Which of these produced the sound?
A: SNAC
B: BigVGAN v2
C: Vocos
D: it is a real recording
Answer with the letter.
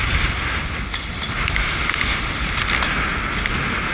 D